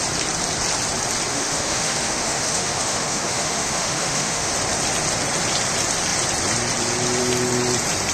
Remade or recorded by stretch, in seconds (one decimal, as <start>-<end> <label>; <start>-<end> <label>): 0.0-1.3 recorded; 1.3-4.5 remade; 4.5-8.1 recorded